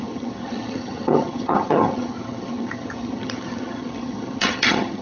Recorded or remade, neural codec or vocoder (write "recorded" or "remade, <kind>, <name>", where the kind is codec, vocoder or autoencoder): remade, vocoder, HiFi-GAN